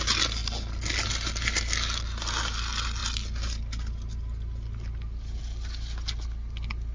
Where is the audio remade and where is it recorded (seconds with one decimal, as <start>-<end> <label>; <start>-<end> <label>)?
0.0-6.9 recorded